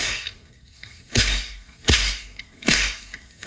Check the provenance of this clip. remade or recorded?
remade